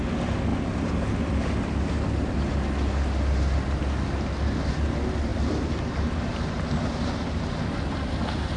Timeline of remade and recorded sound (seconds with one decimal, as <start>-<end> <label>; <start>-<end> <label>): 0.0-5.3 recorded; 5.3-6.6 remade; 6.6-8.6 recorded